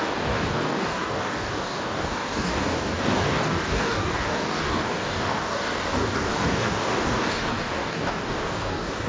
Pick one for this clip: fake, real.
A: fake